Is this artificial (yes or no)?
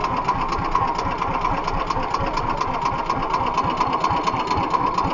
no